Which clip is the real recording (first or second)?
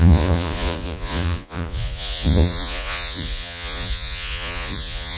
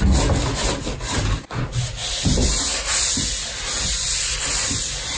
second